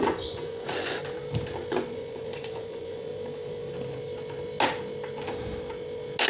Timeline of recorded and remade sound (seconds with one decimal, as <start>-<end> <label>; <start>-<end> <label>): 0.0-1.0 remade; 1.0-1.7 recorded; 1.7-3.1 remade; 3.1-6.3 recorded